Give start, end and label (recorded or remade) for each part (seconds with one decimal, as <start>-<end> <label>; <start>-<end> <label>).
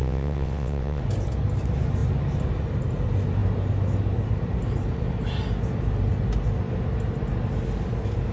0.0-1.0 remade; 1.0-8.3 recorded